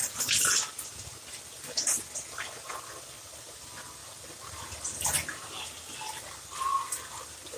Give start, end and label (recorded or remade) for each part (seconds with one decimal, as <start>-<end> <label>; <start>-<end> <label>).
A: 0.0-7.6 recorded